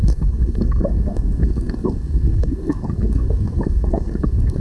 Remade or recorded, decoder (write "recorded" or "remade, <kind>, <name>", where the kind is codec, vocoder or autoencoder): remade, codec, SNAC